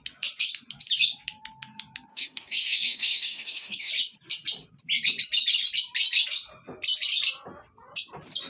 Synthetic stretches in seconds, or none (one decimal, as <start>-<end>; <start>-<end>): 2.1-3.9